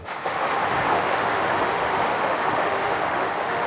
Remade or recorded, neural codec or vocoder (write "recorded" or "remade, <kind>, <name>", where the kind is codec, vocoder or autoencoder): remade, autoencoder, DAC-VAE